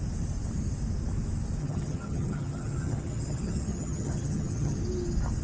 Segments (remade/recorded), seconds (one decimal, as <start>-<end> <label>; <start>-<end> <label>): 0.0-1.6 recorded; 1.6-4.8 remade; 4.8-5.4 recorded